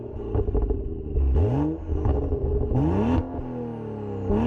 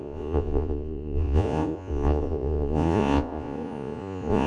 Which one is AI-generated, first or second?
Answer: second